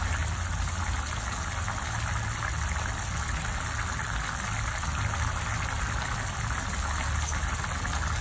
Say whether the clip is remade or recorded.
recorded